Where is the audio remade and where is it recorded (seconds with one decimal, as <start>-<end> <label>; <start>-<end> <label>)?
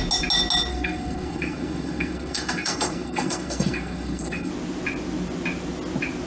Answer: 0.0-0.7 recorded; 0.7-4.5 remade; 4.5-6.3 recorded